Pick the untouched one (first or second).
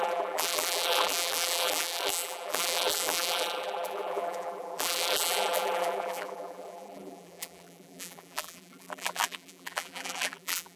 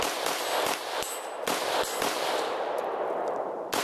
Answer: second